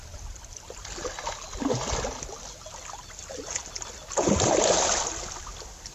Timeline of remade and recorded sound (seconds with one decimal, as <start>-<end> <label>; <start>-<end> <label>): 0.0-5.9 recorded